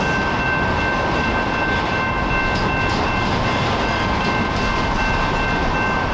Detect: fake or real real